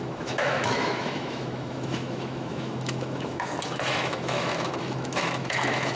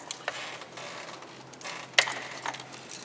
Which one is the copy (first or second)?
first